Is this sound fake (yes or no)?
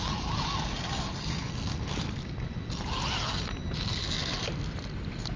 no